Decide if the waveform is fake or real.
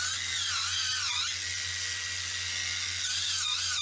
real